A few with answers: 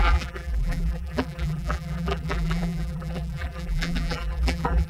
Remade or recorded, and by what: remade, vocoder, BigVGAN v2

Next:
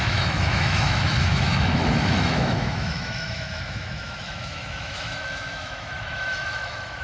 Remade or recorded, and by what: remade, autoencoder, DAC-VAE